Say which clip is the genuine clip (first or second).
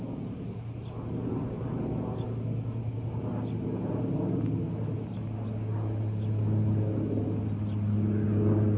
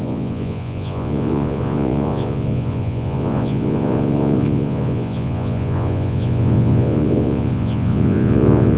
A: first